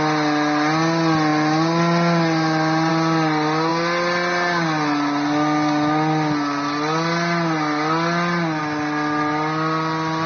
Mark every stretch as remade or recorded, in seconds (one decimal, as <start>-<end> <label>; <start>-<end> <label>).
0.0-10.3 recorded